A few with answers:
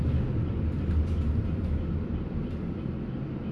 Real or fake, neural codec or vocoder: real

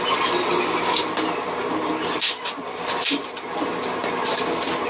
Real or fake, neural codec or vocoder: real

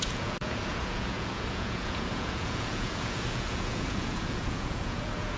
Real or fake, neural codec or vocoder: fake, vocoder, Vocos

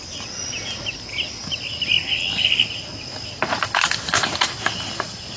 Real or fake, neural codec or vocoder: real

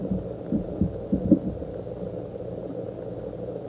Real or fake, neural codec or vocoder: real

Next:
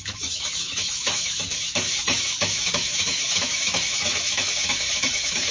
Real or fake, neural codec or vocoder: fake, autoencoder, DAC-VAE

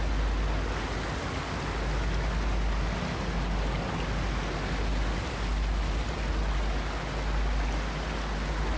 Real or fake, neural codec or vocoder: real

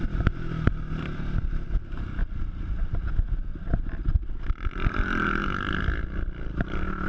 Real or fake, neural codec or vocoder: real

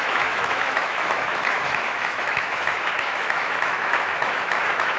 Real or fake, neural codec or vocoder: fake, autoencoder, DAC-VAE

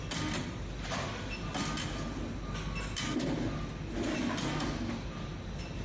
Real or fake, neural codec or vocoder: real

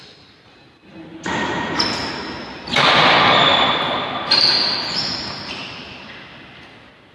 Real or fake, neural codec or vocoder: real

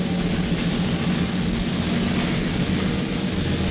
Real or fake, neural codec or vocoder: real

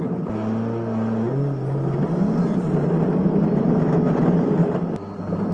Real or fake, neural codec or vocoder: real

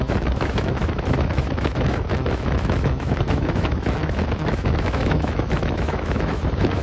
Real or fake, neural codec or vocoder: fake, autoencoder, DAC-VAE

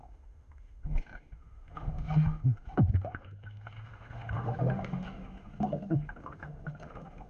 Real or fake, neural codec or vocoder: fake, autoencoder, DAC-VAE